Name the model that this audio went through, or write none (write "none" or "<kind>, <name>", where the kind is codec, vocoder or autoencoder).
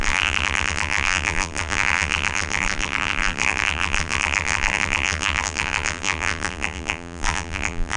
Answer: vocoder, BigVGAN v2